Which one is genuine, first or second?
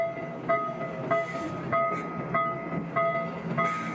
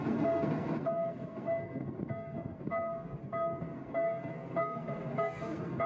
first